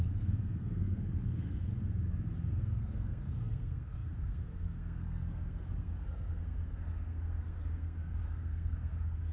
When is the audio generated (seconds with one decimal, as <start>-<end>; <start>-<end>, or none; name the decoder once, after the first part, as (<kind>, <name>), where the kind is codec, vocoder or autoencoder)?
0.0-1.7 (codec, SNAC); 2.5-9.3